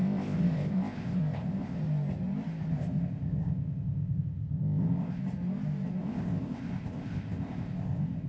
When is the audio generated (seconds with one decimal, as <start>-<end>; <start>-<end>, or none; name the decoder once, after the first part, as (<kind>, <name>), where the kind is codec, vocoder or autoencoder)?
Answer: 0.0-1.8 (codec, ZipCodec); 2.7-5.2; 6.0-8.3